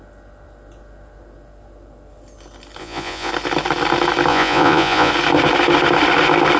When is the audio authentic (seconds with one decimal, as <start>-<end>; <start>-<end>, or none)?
0.0-2.8; 3.3-4.3; 5.1-6.6